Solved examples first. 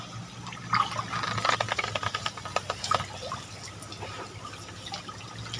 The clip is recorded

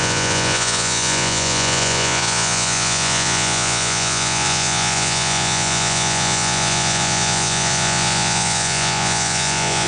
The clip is remade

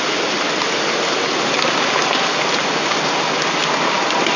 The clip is recorded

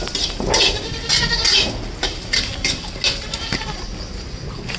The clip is recorded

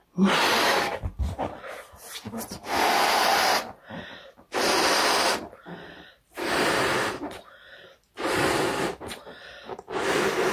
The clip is remade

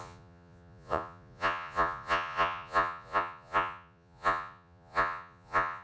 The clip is remade